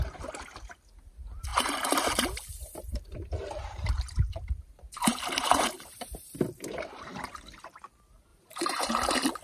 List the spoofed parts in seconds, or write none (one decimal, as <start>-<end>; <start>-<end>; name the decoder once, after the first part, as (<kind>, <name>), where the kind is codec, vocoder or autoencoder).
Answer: 1.5-6.7 (vocoder, BigVGAN v2); 8.3-8.9

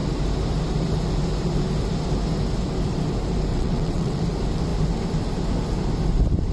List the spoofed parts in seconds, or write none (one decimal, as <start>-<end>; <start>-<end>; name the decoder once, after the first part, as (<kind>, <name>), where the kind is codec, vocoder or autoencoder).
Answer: 3.5-4.2 (vocoder, WaveNeXt)

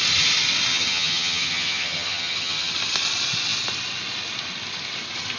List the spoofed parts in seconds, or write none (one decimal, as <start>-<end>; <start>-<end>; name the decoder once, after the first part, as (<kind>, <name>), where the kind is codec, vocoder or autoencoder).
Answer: 0.7-2.7 (vocoder, HiFi-GAN)

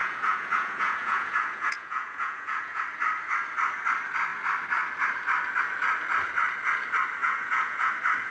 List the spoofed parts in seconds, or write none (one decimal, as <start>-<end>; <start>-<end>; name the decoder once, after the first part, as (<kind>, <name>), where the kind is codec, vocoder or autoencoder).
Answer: 0.0-2.8 (vocoder, Vocos); 7.2-7.9

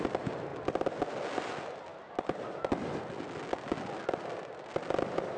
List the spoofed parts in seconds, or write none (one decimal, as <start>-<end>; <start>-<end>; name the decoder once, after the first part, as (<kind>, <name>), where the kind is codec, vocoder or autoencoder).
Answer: none

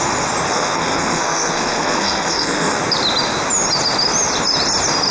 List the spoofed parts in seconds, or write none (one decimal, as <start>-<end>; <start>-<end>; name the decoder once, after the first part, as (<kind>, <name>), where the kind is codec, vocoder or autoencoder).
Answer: 0.5-2.8 (codec, SNAC)

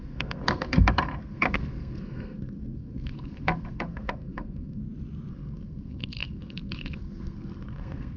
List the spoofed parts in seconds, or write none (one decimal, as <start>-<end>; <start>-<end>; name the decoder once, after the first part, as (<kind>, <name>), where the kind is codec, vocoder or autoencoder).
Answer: 0.0-4.8 (codec, SNAC); 5.3-8.2